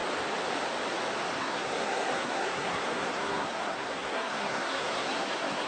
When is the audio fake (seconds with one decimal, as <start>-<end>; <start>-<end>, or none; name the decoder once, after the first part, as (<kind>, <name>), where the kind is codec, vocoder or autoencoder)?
1.4-5.7 (codec, SNAC)